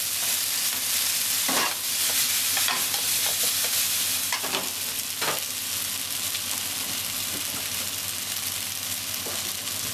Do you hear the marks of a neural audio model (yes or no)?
no